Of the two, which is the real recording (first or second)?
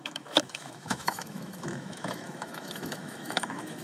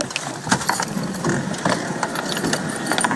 second